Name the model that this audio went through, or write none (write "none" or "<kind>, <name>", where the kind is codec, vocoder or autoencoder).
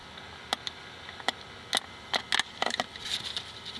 none